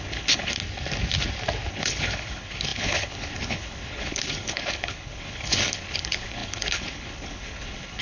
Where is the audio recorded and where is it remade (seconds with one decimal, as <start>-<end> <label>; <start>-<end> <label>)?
0.0-0.6 remade; 0.6-1.7 recorded; 1.7-8.0 remade